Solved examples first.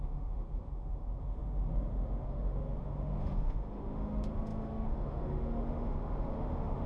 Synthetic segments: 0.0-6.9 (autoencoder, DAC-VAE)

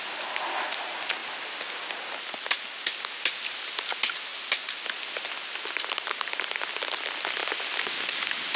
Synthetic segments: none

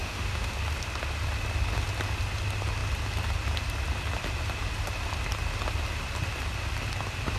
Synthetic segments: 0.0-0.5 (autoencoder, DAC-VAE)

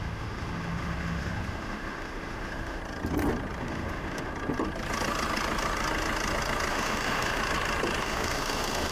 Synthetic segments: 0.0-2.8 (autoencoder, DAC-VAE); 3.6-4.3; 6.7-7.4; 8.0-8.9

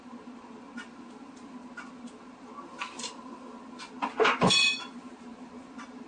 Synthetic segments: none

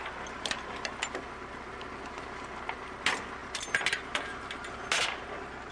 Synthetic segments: none

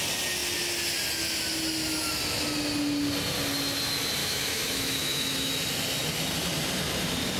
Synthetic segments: 4.2-5.5 (autoencoder, DAC-VAE)